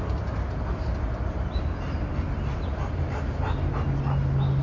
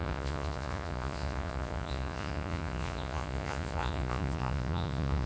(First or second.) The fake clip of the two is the second